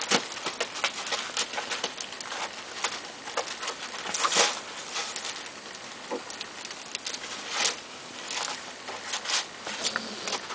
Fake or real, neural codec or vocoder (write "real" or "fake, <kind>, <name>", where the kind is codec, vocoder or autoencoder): real